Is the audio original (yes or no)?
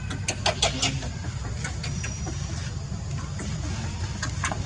yes